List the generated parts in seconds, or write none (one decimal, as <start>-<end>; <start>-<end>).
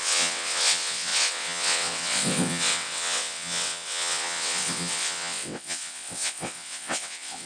0.0-7.5